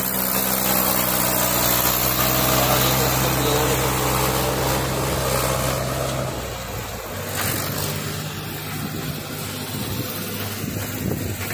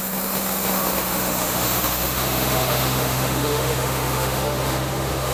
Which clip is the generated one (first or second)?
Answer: second